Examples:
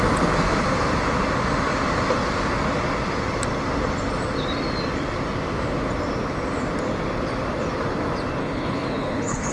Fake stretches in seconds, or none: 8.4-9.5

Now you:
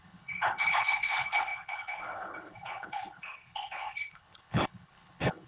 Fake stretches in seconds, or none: 0.0-5.5

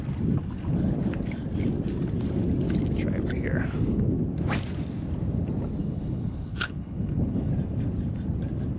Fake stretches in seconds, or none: 5.8-7.5

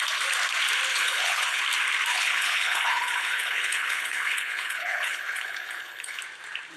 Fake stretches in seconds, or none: 0.9-1.6; 2.1-6.2

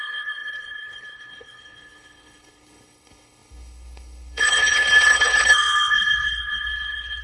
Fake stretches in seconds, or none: 0.0-7.2

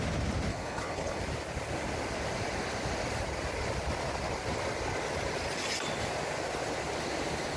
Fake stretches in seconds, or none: 0.5-1.2

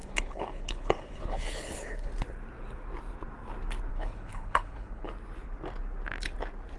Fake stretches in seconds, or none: 0.0-2.1; 3.9-5.1

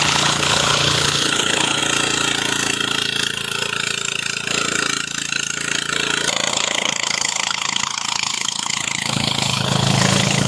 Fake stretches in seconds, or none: 0.0-1.8; 6.5-10.5